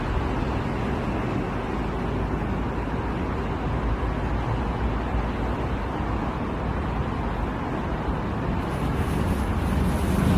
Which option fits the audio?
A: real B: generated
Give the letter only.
A